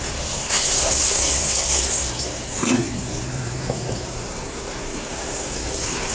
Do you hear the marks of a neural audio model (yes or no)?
yes